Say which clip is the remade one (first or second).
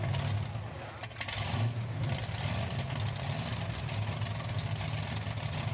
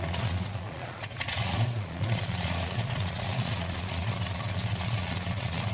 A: second